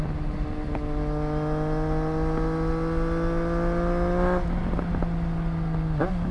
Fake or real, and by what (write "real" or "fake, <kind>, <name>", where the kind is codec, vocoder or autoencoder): real